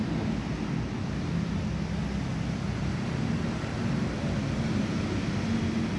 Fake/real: real